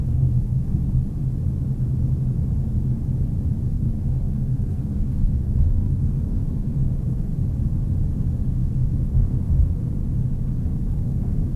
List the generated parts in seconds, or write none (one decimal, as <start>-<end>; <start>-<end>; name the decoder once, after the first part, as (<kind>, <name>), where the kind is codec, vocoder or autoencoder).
0.0-0.8 (codec, SNAC); 3.7-7.3; 8.5-10.0; 10.6-11.6